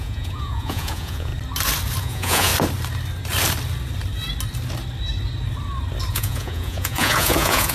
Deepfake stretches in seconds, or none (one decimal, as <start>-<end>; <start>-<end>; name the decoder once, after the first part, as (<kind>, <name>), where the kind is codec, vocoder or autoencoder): 0.0-1.3 (vocoder, Vocos); 2.0-2.5; 6.1-7.7

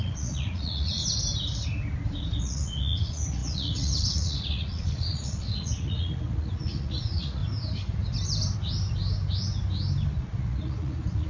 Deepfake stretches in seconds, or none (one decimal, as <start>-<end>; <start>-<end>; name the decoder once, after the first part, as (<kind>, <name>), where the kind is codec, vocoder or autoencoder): 0.0-1.0 (vocoder, Vocos); 2.4-7.4; 10.2-11.3